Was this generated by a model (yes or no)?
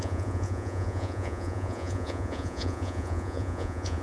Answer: yes